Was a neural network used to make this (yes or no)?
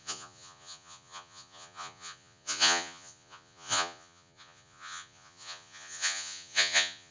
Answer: yes